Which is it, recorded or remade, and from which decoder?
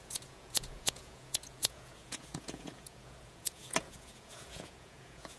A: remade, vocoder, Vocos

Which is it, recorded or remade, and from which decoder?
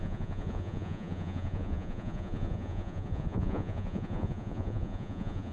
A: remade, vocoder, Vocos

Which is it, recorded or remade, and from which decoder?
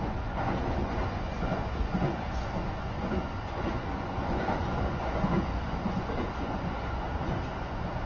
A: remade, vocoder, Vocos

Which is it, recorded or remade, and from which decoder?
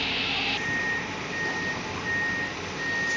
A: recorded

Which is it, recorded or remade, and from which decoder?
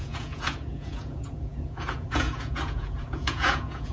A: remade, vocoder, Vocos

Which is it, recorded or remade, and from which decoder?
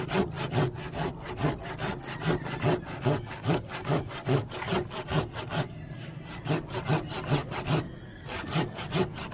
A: recorded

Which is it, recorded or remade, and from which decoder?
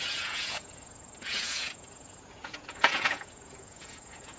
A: remade, vocoder, Vocos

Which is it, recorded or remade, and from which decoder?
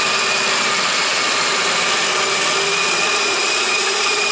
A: recorded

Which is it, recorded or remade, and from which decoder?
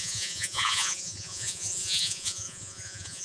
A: remade, vocoder, Vocos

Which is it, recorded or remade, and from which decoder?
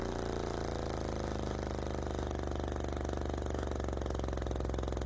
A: recorded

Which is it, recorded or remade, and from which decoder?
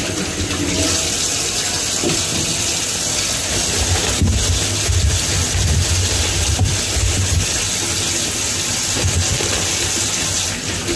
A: recorded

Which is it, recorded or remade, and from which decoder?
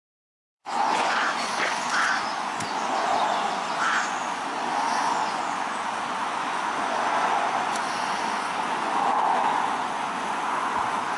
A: remade, vocoder, Vocos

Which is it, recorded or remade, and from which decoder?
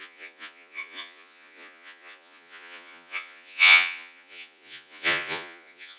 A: remade, vocoder, Vocos